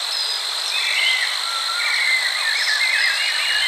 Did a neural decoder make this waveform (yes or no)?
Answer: no